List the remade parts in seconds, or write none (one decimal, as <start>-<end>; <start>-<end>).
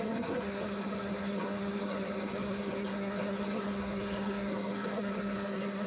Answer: 0.0-5.9